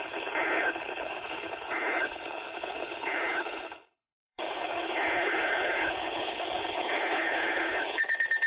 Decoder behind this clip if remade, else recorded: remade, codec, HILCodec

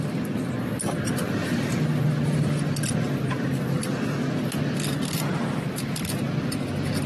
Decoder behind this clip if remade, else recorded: recorded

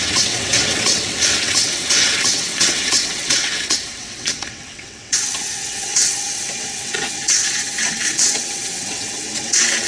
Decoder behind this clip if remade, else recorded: remade, vocoder, WaveNeXt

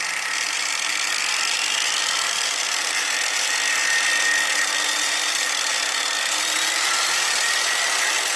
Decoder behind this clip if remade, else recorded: recorded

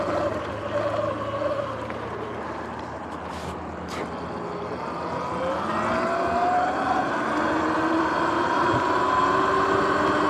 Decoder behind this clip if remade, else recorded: recorded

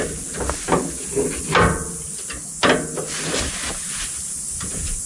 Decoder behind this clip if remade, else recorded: recorded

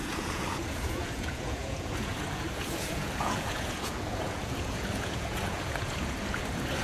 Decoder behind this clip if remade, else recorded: remade, vocoder, Vocos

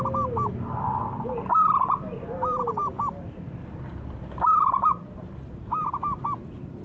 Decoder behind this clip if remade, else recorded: recorded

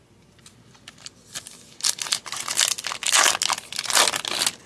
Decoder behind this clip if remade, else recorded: recorded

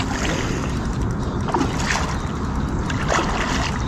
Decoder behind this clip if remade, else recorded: recorded